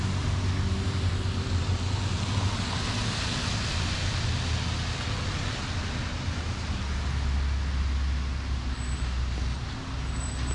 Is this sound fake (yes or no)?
no